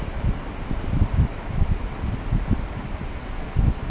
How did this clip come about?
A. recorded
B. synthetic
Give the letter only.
A